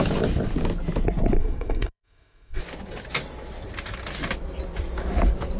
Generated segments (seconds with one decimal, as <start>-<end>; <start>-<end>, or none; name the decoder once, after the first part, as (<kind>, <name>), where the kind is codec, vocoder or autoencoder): 1.4-2.6 (codec, SNAC)